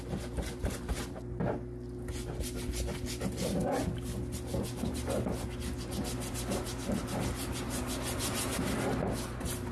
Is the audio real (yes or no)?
yes